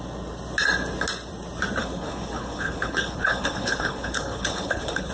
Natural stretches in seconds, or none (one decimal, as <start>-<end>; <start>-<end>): 0.0-1.8